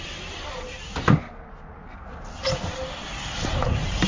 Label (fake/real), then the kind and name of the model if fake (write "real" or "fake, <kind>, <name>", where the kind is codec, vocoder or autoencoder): real